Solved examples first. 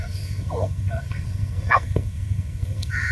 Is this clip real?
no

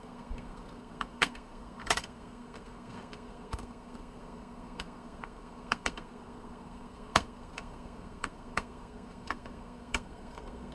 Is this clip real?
no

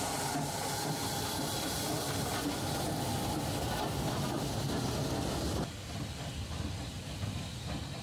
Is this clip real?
yes